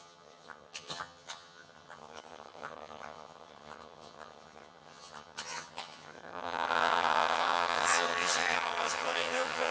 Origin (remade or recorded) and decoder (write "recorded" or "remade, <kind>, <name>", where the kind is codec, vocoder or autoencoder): remade, vocoder, HiFi-GAN